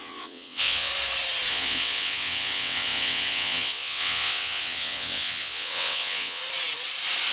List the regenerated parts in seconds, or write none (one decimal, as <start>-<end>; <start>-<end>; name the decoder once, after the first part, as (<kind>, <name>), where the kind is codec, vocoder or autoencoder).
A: 0.0-0.9 (vocoder, WaveNeXt); 1.5-6.4